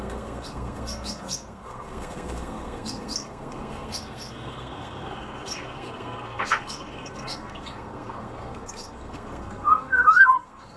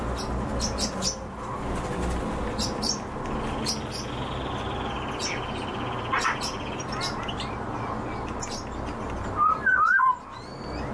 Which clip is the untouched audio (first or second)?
second